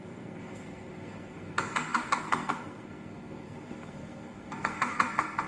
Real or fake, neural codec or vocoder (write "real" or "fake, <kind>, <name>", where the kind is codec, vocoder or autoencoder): fake, codec, SNAC